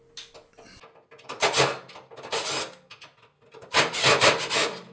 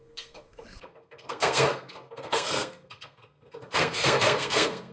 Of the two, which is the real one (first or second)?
first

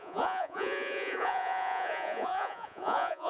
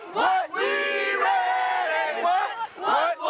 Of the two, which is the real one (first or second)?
second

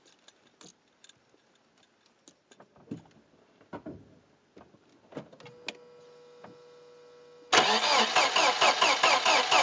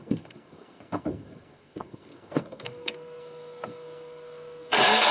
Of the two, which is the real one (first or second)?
first